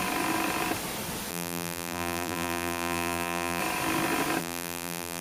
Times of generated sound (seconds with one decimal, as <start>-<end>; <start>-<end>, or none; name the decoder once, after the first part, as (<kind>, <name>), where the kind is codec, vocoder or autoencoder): 1.3-3.6 (vocoder, BigVGAN v2); 4.4-5.2